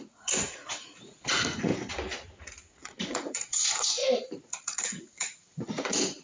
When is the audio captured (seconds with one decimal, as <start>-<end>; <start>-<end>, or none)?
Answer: 1.7-2.4; 4.0-4.5